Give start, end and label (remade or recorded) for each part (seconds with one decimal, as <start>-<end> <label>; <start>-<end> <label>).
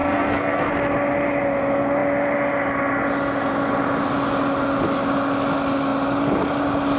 0.0-0.7 remade; 0.7-7.0 recorded